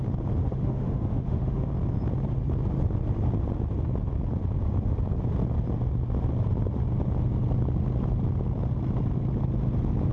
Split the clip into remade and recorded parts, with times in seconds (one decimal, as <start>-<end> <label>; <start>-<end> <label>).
0.0-0.4 recorded; 0.4-1.7 remade; 1.7-10.1 recorded